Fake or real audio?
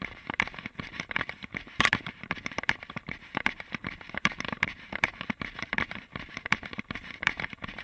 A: fake